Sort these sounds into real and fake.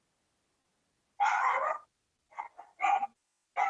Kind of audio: real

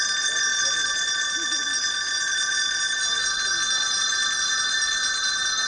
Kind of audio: real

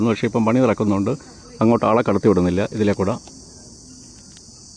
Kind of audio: real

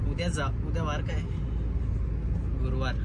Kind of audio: real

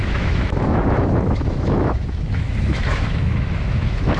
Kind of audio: fake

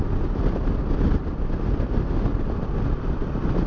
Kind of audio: real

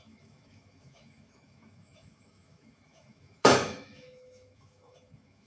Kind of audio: fake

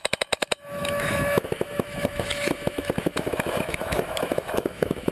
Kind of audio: fake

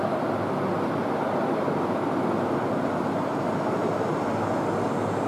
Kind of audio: real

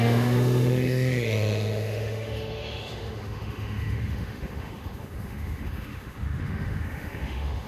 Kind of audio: fake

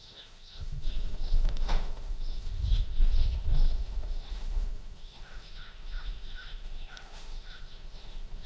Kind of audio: fake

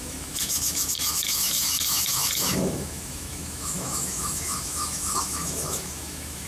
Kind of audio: fake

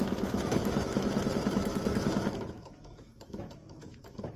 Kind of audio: fake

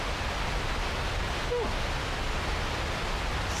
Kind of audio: real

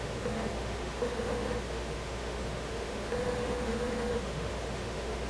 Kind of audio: fake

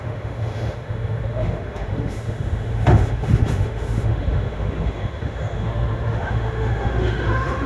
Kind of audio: fake